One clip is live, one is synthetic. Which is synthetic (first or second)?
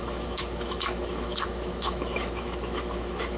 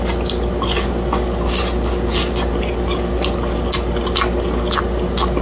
first